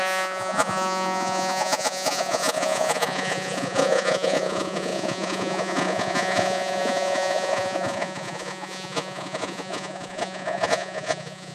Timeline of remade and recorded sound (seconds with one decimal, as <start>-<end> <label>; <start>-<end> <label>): 0.0-11.5 remade